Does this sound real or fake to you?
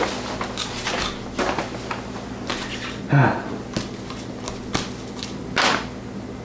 real